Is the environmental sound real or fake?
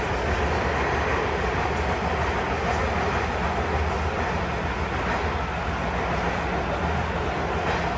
real